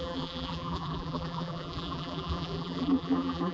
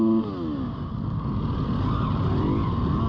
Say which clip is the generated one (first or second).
first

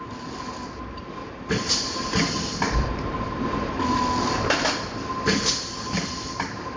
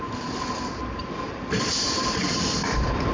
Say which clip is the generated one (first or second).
second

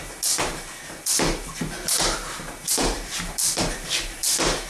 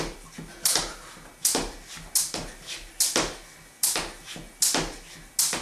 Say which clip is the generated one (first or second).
first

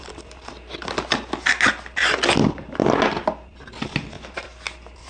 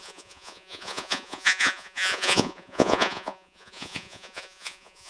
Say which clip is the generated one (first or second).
second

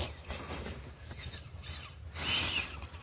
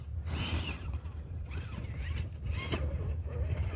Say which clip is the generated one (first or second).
second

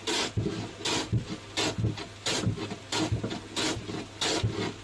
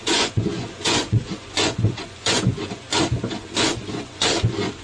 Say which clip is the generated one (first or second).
second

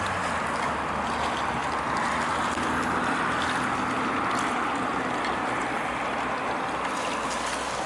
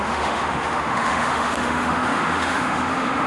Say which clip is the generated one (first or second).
second